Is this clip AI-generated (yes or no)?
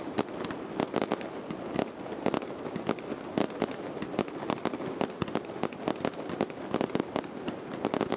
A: no